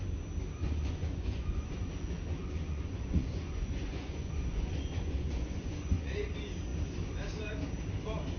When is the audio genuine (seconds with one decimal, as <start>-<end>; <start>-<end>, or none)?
0.0-0.6; 1.9-2.4; 6.3-8.4